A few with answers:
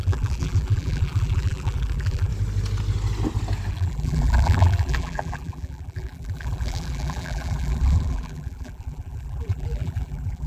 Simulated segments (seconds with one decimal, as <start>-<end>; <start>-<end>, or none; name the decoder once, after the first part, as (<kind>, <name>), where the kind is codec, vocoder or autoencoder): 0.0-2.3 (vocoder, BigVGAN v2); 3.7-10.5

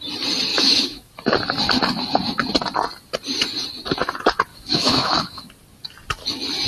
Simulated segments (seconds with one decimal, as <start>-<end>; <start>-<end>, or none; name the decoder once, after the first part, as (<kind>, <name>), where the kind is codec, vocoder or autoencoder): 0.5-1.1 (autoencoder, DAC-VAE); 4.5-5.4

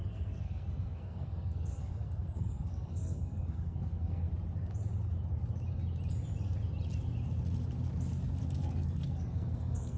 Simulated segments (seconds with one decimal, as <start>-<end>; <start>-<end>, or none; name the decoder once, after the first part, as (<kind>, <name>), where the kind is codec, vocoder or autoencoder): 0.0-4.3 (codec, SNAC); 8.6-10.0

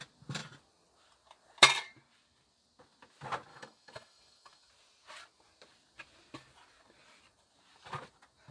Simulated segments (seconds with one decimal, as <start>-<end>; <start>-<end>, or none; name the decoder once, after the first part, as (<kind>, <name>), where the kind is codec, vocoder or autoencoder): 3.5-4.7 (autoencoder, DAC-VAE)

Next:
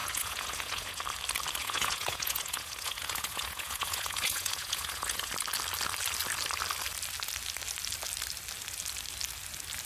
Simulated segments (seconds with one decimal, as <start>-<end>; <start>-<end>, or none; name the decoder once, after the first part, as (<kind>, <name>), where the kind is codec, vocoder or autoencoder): 0.0-1.0 (vocoder, Vocos); 1.6-5.3

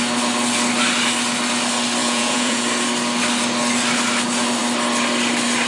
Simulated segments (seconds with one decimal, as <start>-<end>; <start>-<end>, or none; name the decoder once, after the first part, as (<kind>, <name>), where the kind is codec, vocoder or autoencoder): 2.0-2.6 (vocoder, Vocos)